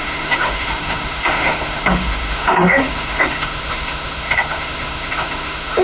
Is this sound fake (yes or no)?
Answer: yes